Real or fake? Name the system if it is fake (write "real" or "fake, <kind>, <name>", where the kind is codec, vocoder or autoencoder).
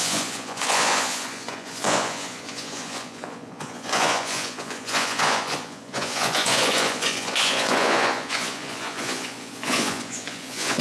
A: fake, vocoder, Vocos